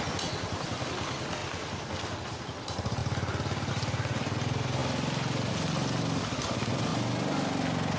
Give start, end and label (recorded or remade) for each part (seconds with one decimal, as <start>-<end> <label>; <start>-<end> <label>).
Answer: 0.0-8.0 recorded